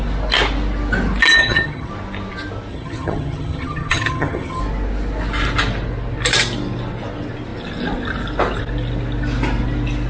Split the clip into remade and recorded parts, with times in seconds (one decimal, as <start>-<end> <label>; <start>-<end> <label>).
0.0-1.4 recorded; 1.4-1.9 remade; 1.9-2.7 recorded; 2.7-4.6 remade; 4.6-10.1 recorded